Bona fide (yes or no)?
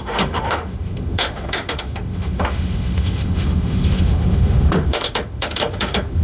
no